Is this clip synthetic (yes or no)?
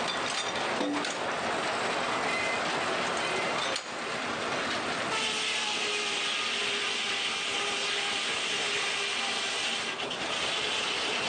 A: no